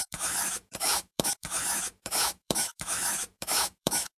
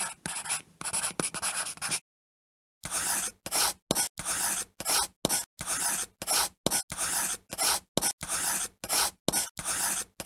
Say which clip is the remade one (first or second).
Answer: first